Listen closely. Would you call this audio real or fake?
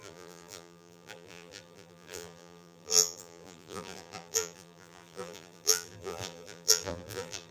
fake